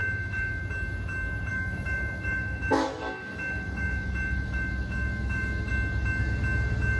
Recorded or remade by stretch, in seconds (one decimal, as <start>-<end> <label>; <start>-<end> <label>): 0.0-0.6 remade; 0.6-1.5 recorded; 1.5-5.7 remade; 5.7-7.0 recorded